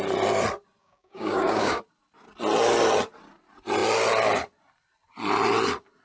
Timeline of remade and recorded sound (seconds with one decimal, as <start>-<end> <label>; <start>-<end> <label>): 0.0-0.8 recorded; 0.8-1.8 remade; 1.8-6.0 recorded